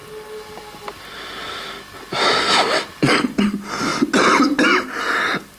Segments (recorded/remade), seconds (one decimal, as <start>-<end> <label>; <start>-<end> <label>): 0.0-5.6 recorded